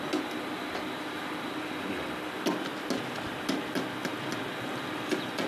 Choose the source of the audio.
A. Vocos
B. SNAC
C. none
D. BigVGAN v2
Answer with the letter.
C